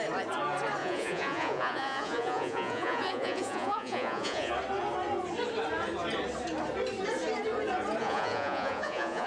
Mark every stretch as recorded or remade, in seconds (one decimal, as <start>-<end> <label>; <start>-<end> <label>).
0.0-0.8 recorded; 0.8-4.5 remade; 4.5-8.0 recorded; 8.0-9.3 remade